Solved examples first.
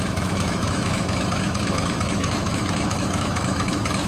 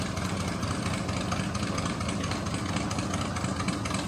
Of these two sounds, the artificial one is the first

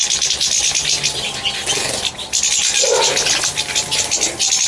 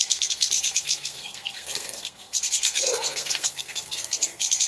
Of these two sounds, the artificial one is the second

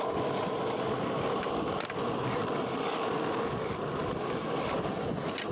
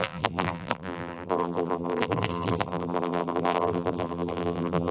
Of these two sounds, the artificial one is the second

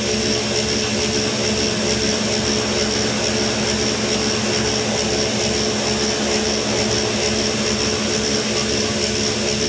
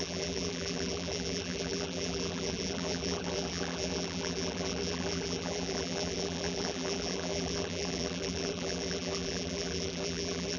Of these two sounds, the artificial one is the second